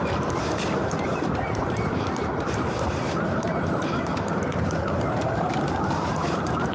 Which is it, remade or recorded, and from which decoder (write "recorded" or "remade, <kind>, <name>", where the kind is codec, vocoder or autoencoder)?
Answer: remade, vocoder, BigVGAN v2